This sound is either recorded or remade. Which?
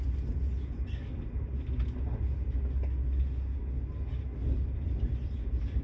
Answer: recorded